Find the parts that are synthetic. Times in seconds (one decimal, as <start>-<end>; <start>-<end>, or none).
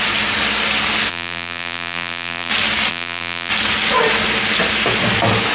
1.1-2.5; 2.9-3.5